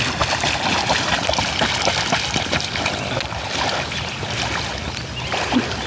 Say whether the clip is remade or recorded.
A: recorded